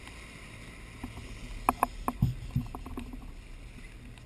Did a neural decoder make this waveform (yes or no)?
no